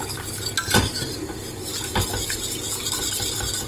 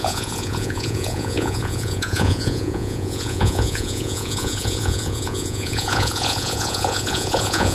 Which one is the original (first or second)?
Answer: first